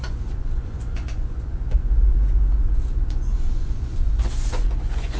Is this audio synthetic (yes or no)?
yes